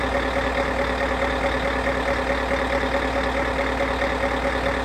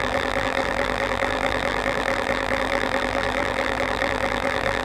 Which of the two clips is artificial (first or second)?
second